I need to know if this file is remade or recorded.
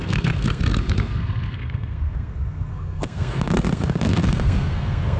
remade